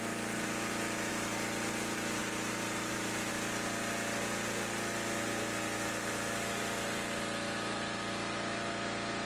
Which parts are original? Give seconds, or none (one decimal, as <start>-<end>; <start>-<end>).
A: 0.0-2.2; 3.3-9.3